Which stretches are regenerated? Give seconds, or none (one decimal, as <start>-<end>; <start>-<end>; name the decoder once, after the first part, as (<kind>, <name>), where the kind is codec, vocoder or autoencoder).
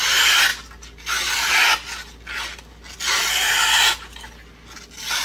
none